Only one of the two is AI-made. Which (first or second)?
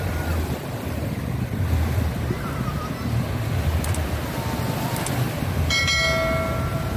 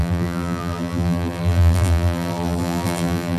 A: second